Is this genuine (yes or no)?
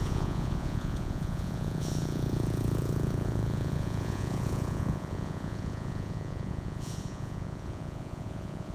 no